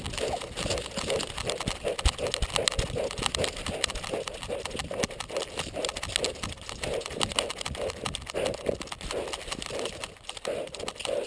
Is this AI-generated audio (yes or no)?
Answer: no